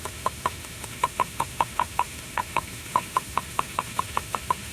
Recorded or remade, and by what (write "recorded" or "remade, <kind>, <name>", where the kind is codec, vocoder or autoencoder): remade, autoencoder, DAC-VAE